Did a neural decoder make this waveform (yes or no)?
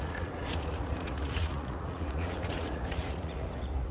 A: yes